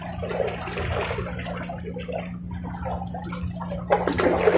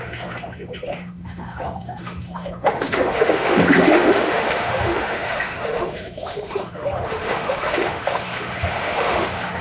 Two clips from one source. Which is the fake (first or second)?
second